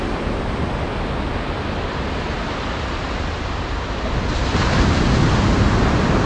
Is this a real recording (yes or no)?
yes